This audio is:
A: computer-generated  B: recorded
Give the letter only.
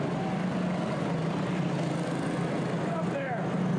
B